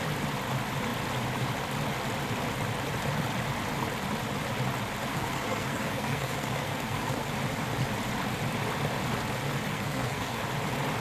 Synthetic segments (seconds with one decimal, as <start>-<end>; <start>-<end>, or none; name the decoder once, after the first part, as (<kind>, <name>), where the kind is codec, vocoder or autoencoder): 5.1-7.3 (codec, SNAC); 9.7-10.4